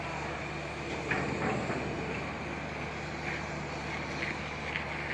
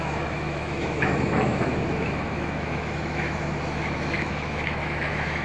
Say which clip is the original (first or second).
first